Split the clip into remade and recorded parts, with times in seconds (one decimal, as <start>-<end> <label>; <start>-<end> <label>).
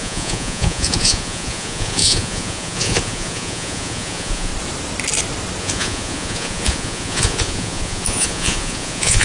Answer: 0.0-4.5 remade; 4.5-5.6 recorded; 5.6-9.2 remade